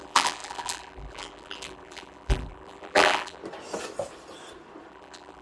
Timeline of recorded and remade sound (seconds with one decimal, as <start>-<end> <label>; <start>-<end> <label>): 0.0-3.4 remade; 3.4-4.9 recorded; 4.9-5.4 remade

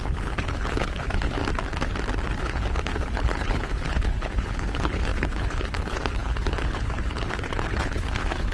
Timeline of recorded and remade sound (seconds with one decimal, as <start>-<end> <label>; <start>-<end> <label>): 0.0-1.4 remade; 1.4-2.4 recorded; 2.4-8.5 remade

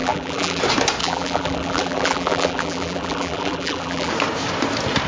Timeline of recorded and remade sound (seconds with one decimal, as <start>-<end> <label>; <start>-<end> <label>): 0.0-0.6 remade; 0.6-1.0 recorded; 1.0-4.1 remade; 4.1-5.1 recorded

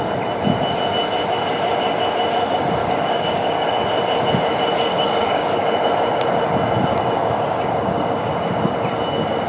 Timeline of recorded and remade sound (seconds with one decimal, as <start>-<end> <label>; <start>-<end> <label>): 0.0-2.8 recorded; 2.8-3.7 remade; 3.7-4.9 recorded; 4.9-5.6 remade; 5.6-6.9 recorded; 6.9-8.3 remade; 8.3-9.5 recorded

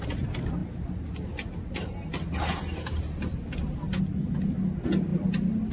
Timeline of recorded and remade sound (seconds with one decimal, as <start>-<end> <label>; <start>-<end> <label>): 0.0-5.7 recorded

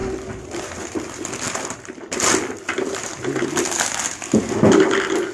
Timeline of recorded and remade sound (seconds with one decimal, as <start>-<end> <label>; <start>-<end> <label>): 0.0-5.3 recorded